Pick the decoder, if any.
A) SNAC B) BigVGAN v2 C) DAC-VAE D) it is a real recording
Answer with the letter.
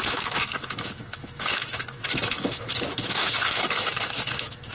C